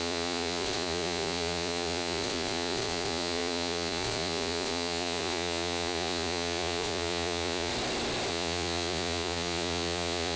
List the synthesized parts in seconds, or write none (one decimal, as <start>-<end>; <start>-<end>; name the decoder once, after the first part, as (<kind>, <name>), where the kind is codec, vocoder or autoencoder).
0.0-7.7 (vocoder, Vocos); 8.3-10.4